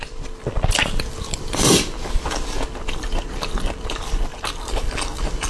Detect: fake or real fake